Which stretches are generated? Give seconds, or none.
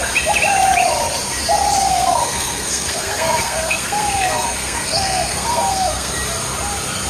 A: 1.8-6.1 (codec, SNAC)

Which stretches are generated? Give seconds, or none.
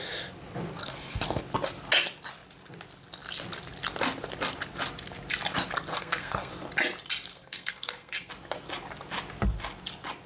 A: 0.8-1.4 (codec, SNAC); 5.9-6.5; 7.3-8.3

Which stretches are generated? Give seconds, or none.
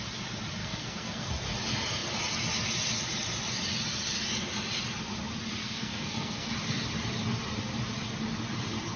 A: 0.6-1.3 (codec, SNAC); 5.6-6.5